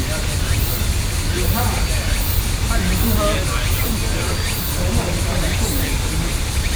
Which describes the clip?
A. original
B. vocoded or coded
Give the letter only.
A